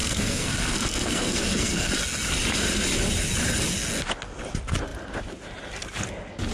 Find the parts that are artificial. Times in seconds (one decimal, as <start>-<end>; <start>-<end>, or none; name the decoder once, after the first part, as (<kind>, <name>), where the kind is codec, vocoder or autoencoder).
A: 0.0-1.9 (codec, SNAC)

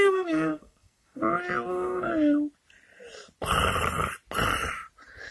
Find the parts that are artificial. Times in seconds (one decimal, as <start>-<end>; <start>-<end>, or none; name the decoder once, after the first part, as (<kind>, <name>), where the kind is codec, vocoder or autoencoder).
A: 0.0-1.2 (codec, SNAC); 1.7-2.1

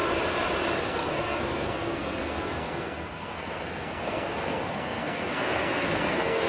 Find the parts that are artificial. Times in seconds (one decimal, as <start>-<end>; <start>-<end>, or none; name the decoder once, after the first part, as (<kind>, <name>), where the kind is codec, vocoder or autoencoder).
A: 0.8-6.5 (codec, SNAC)

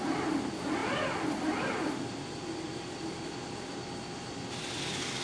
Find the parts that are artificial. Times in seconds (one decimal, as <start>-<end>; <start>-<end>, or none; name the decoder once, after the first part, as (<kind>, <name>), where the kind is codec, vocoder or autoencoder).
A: none